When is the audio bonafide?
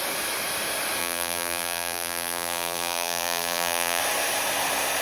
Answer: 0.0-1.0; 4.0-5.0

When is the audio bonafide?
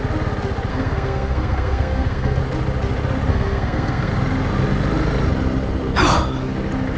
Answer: 0.0-0.7; 2.4-3.3; 4.1-7.0